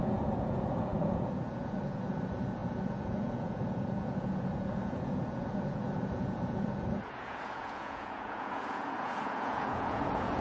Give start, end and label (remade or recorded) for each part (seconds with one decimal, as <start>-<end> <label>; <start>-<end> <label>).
0.0-10.4 remade